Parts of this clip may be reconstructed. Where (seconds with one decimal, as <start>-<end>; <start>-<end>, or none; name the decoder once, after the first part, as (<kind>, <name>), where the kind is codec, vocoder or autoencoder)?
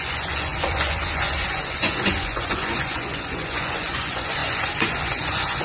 0.0-5.6 (vocoder, Vocos)